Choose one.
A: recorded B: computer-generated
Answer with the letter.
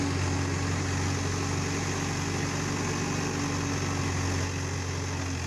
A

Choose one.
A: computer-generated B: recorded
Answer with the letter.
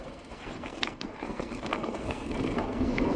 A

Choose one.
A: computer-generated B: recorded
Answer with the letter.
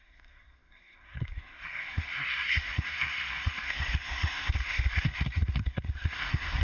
A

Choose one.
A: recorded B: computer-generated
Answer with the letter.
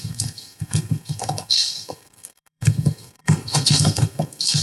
B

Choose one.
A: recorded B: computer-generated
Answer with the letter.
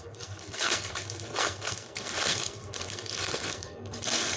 B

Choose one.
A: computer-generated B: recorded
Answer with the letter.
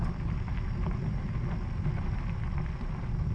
B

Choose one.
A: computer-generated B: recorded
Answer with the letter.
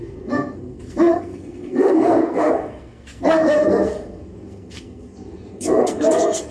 A